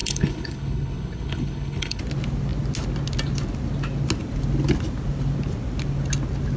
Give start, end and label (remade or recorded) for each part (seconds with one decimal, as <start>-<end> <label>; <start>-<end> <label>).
0.0-2.0 remade; 2.0-6.6 recorded